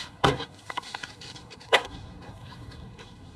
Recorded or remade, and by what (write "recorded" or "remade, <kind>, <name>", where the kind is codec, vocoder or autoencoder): remade, codec, SNAC